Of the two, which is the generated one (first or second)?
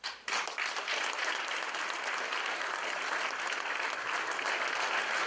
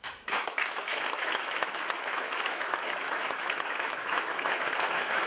second